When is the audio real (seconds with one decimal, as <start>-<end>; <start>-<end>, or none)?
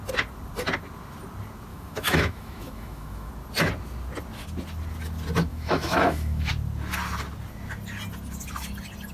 0.0-1.7; 3.3-5.5; 6.5-9.1